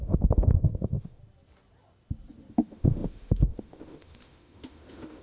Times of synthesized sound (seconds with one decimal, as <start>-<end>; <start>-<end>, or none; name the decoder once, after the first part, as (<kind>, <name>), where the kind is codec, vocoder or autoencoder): 0.0-1.2 (autoencoder, DAC-VAE); 2.5-5.2